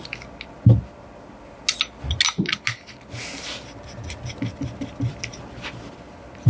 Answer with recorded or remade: recorded